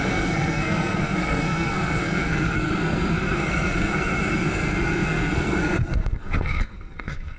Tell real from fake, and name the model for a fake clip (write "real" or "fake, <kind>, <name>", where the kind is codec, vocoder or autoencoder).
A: fake, codec, SNAC